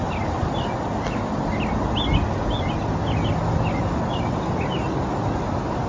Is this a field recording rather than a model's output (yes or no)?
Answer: yes